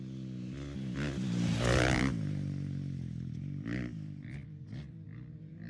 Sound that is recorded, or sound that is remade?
recorded